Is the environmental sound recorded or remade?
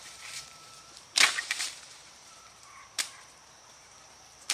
remade